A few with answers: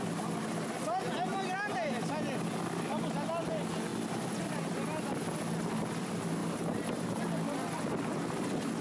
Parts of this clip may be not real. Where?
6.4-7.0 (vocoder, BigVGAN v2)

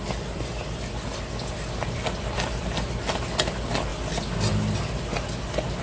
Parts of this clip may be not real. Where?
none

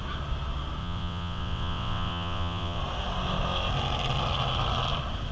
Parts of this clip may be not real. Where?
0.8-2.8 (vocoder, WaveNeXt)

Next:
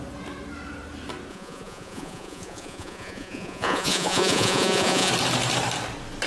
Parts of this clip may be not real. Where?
1.3-5.1 (vocoder, Vocos)